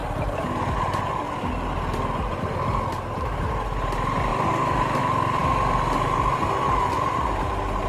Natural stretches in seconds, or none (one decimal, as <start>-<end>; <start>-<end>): 0.0-7.9